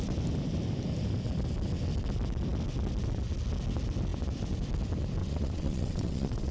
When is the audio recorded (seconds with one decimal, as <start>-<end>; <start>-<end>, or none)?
0.0-5.2